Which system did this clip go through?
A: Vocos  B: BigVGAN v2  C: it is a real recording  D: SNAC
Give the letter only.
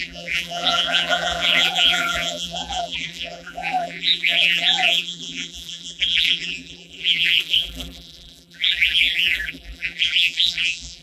B